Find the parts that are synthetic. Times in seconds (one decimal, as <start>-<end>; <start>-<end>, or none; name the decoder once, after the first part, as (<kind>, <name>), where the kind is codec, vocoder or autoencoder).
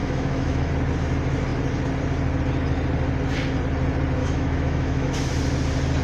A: 0.0-0.7 (autoencoder, DAC-VAE); 4.2-5.3